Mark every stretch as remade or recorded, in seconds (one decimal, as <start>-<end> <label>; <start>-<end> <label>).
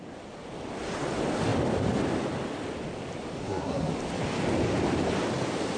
0.0-3.4 recorded; 3.4-3.9 remade; 3.9-5.8 recorded